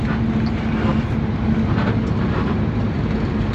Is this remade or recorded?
recorded